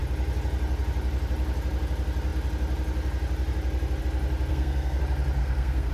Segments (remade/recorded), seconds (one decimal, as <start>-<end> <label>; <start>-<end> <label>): 0.0-4.5 recorded; 4.5-5.0 remade; 5.0-5.4 recorded; 5.4-5.9 remade